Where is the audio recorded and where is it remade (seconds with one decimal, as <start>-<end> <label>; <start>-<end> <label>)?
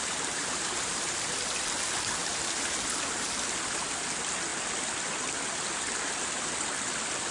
0.0-1.4 remade; 1.4-2.2 recorded; 2.2-2.7 remade; 2.7-7.3 recorded